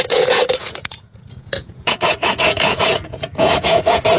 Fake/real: fake